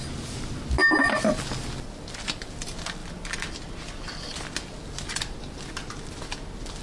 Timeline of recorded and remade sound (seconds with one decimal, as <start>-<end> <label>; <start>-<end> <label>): 0.0-6.8 recorded